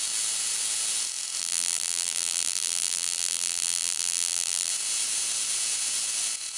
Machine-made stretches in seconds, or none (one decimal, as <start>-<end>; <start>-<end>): 1.4-4.7

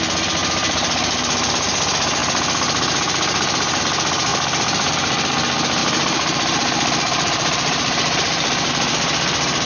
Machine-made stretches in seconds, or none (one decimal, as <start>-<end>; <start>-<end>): 0.4-1.5; 4.3-4.9; 5.8-8.7